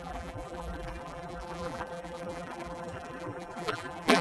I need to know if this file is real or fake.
fake